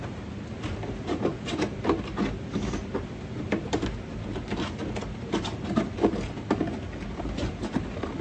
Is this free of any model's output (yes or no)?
yes